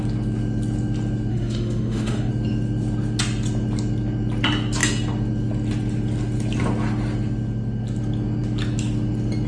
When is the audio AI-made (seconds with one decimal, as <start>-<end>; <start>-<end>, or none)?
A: 1.3-2.3